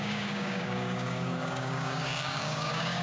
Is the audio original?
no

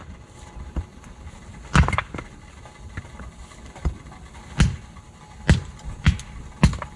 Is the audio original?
yes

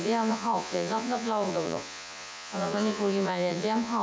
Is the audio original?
no